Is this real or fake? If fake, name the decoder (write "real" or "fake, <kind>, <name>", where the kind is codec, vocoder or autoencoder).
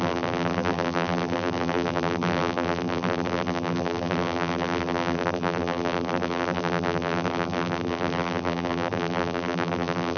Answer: fake, vocoder, BigVGAN v2